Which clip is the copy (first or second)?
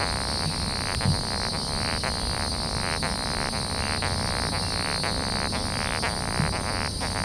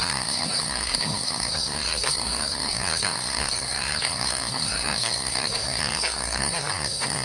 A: second